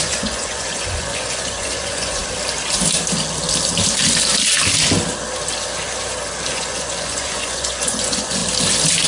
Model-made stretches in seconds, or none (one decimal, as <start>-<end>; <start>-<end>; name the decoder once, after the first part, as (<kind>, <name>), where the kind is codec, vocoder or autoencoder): 0.0-2.2 (vocoder, Vocos); 6.5-8.4